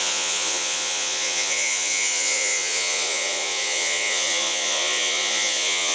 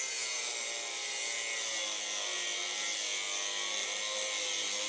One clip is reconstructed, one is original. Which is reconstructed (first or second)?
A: first